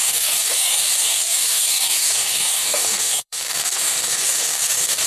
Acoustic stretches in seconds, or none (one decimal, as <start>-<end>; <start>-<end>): none